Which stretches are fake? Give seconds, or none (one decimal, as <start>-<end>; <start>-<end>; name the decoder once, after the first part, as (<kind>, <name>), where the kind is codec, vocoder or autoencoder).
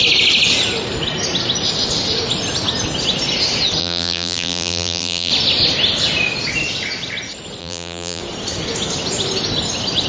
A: 3.8-5.3 (vocoder, BigVGAN v2); 7.6-8.2